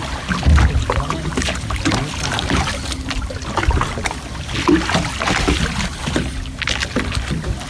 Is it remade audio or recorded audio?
recorded